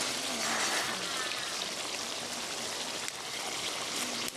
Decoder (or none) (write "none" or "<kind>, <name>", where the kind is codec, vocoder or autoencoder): none